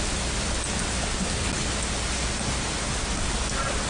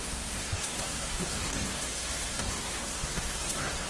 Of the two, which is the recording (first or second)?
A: first